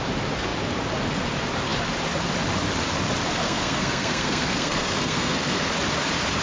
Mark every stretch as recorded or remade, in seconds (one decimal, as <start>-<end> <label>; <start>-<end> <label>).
0.0-3.4 recorded; 3.4-5.7 remade; 5.7-6.4 recorded